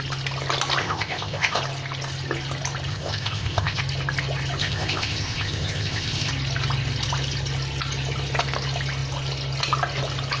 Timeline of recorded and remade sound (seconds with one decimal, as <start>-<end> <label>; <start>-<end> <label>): 0.0-0.8 recorded; 0.8-1.6 remade; 1.6-2.9 recorded; 2.9-3.8 remade; 3.8-4.6 recorded; 4.6-6.3 remade; 6.3-10.4 recorded